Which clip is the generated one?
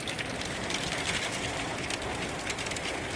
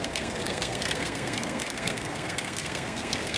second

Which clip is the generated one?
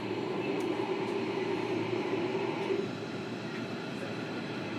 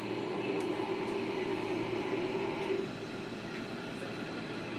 first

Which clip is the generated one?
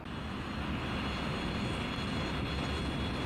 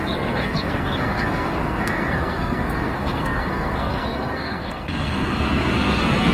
second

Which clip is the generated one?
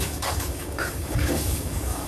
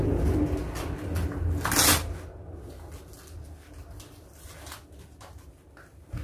first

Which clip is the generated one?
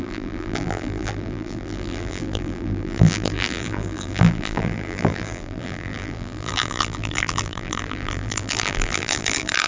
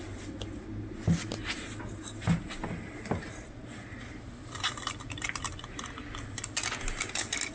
first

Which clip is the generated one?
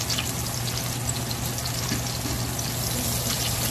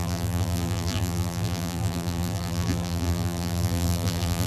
second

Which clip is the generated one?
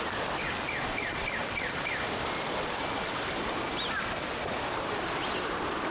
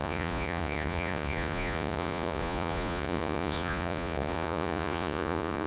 second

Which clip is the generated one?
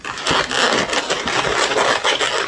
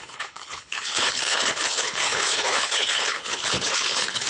second